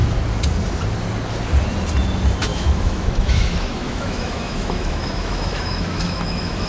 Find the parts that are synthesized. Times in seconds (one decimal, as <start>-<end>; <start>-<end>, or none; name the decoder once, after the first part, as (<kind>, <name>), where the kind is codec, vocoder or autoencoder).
2.5-6.7 (autoencoder, DAC-VAE)

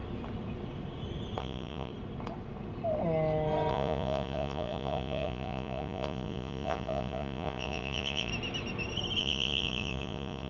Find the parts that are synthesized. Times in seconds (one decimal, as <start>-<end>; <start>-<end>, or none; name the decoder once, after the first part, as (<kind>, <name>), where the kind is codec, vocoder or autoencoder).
1.4-1.9 (vocoder, Vocos); 3.7-8.3; 9.2-10.5

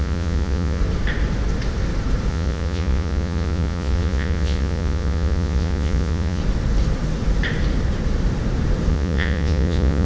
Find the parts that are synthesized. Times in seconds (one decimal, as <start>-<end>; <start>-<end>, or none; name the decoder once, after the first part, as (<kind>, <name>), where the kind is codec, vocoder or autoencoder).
0.0-0.8 (vocoder, Vocos); 2.3-6.4; 8.9-10.1

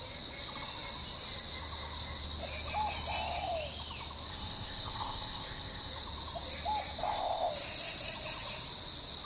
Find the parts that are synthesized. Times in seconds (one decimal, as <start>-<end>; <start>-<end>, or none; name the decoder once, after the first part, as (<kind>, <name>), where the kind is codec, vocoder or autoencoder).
4.3-5.9 (codec, ZipCodec); 7.0-7.5

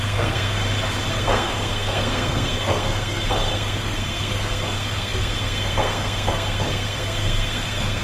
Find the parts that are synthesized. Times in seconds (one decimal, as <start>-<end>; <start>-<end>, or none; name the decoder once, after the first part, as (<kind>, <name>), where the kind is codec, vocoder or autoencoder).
0.0-0.6 (codec, SNAC); 1.1-8.0

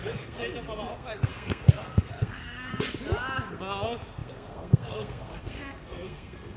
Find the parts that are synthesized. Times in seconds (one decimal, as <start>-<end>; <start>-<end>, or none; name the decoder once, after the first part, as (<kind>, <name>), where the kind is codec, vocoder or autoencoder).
0.0-0.4 (codec, SNAC); 0.9-2.7; 3.5-6.6

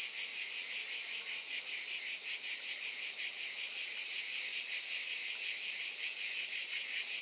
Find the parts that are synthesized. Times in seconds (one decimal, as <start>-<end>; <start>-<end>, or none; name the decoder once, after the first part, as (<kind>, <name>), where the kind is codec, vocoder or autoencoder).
0.0-4.5 (vocoder, Vocos); 5.2-7.2